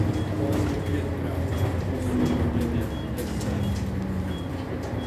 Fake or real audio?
real